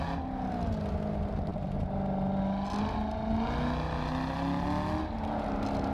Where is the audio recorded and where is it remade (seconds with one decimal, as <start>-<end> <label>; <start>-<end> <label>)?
0.0-5.9 recorded